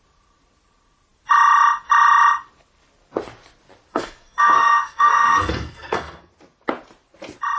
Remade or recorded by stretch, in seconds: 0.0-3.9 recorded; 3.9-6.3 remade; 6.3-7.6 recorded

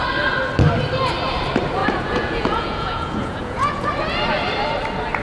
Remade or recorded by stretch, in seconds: 0.0-1.8 recorded; 1.8-3.9 remade; 3.9-5.2 recorded

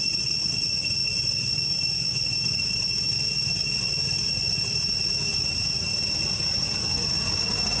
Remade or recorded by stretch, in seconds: 0.0-7.8 recorded

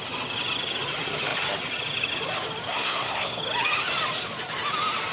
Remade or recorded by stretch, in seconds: 0.0-2.7 recorded; 2.7-3.4 remade; 3.4-5.1 recorded

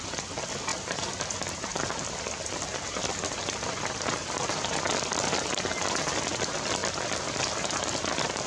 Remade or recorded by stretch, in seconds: 0.0-8.5 recorded

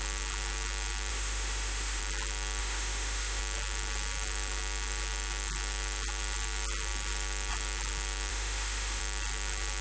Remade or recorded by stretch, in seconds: 0.0-1.1 recorded; 1.1-2.0 remade; 2.0-2.6 recorded; 2.6-3.4 remade; 3.4-8.3 recorded; 8.3-9.0 remade; 9.0-9.8 recorded

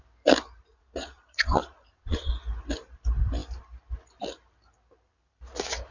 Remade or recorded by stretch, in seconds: 0.0-0.7 recorded; 0.7-2.3 remade; 2.3-5.9 recorded